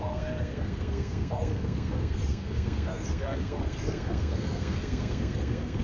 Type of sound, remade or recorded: remade